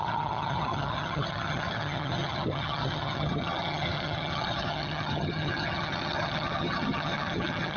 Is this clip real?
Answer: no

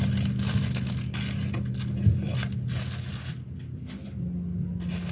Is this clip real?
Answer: yes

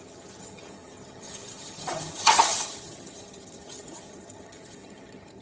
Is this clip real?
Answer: no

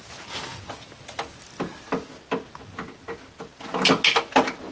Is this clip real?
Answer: yes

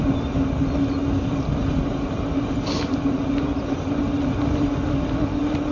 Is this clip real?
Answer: yes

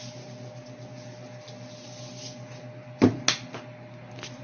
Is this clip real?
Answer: yes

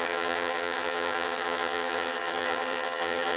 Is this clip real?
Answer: no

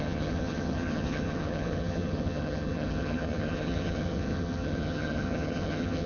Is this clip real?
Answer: no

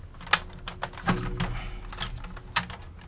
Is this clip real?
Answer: yes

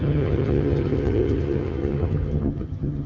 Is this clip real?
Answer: no